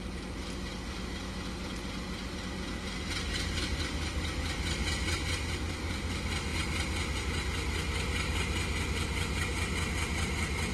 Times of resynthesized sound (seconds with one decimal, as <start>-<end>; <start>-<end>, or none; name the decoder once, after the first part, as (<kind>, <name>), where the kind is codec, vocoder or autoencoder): none